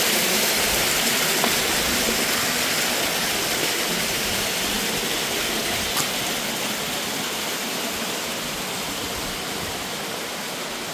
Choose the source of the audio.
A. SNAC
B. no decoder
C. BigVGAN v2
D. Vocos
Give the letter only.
B